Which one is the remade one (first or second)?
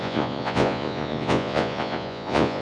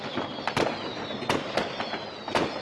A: first